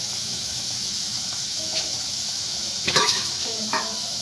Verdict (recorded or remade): remade